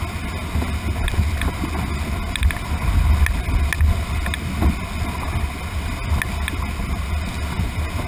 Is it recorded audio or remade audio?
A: recorded